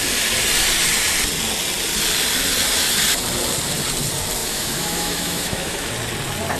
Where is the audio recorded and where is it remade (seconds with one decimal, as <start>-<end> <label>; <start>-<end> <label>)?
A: 0.0-4.4 recorded; 4.4-5.9 remade; 5.9-6.6 recorded